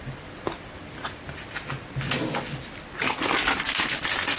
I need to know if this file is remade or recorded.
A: recorded